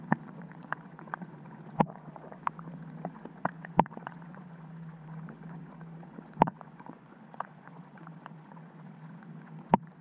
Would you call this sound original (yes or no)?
no